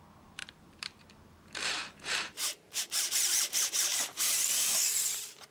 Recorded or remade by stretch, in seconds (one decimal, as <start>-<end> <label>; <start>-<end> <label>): 0.0-0.4 recorded; 0.4-1.0 remade; 1.0-1.8 recorded; 1.8-4.9 remade; 4.9-5.5 recorded